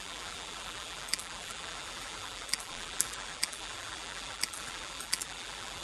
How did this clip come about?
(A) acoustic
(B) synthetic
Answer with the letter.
B